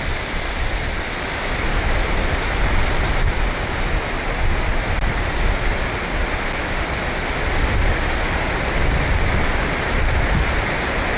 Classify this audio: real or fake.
real